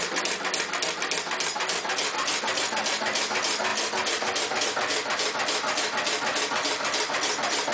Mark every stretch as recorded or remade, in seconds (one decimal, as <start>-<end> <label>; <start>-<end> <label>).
0.0-7.7 recorded